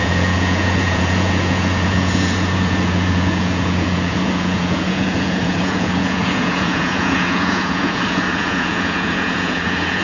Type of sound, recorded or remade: remade